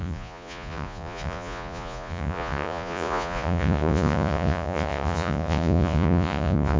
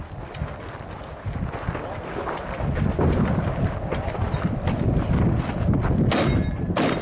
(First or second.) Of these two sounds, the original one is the second